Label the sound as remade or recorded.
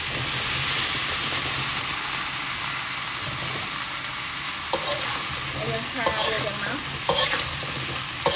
recorded